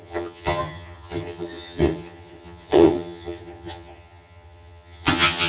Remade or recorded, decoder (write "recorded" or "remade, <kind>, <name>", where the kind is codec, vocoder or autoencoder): remade, vocoder, HiFi-GAN